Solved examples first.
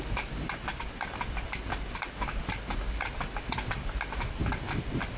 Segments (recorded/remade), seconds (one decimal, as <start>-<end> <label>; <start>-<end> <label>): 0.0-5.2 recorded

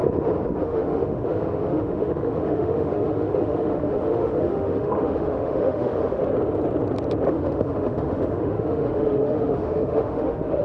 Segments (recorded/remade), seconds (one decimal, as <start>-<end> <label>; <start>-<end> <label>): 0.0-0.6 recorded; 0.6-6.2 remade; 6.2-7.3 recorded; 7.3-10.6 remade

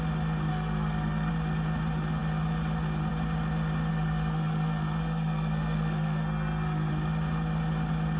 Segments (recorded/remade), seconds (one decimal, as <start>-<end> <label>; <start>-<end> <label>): 0.0-0.5 recorded; 0.5-1.3 remade; 1.3-3.9 recorded; 3.9-6.9 remade; 6.9-8.2 recorded

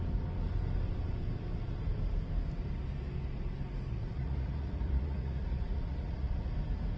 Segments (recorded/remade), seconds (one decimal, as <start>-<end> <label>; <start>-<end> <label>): 0.0-3.9 recorded; 3.9-6.5 remade; 6.5-7.0 recorded